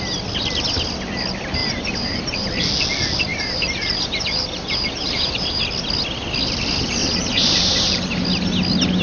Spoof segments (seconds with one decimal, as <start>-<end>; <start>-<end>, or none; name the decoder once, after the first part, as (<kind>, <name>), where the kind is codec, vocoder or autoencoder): 1.6-2.5 (vocoder, BigVGAN v2); 3.3-5.6; 7.0-7.9

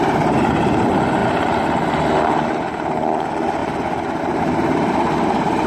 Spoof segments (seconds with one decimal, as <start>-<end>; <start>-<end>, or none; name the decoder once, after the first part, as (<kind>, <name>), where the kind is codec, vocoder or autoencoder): 0.0-1.2 (vocoder, BigVGAN v2); 2.1-3.6; 4.2-5.7

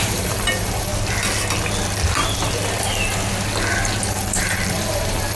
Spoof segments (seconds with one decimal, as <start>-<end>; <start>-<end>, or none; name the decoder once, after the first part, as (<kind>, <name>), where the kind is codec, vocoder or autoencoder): 0.0-0.9 (vocoder, BigVGAN v2); 4.1-5.4

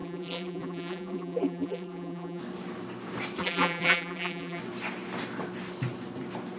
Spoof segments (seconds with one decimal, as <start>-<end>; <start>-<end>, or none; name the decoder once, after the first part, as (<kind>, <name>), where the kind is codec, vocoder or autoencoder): 0.0-2.4 (vocoder, BigVGAN v2); 3.4-4.6

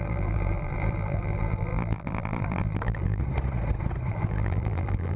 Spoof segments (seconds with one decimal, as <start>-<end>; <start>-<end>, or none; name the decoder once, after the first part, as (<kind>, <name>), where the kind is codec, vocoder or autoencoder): 0.0-3.2 (vocoder, BigVGAN v2); 4.1-5.2